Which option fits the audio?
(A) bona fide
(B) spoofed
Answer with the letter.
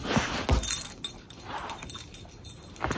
A